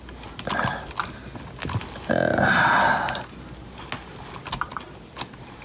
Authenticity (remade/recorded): recorded